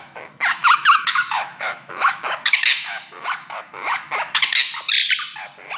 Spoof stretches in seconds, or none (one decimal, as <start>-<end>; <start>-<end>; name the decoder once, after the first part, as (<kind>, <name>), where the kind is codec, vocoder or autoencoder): 0.0-4.7 (autoencoder, DAC-VAE)